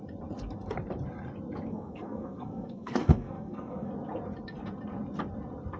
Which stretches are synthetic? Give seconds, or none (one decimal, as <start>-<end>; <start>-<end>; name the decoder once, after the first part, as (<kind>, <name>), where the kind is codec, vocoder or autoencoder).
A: 1.7-3.9 (codec, SNAC)